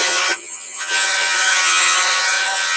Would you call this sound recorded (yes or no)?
no